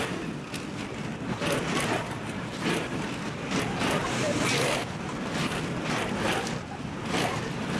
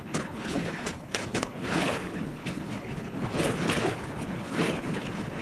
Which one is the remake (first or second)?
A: second